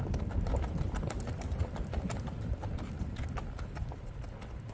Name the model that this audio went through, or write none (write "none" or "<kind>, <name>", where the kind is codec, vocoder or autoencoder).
none